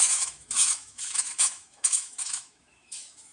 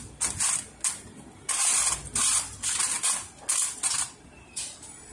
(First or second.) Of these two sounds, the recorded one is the second